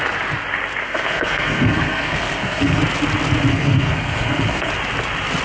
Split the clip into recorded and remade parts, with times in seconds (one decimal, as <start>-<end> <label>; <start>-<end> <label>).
0.0-0.8 recorded; 0.8-2.8 remade; 2.8-3.5 recorded; 3.5-4.7 remade; 4.7-5.4 recorded